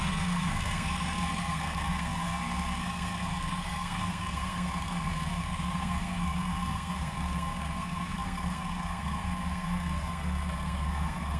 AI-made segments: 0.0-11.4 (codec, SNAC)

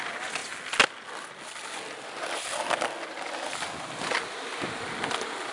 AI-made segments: none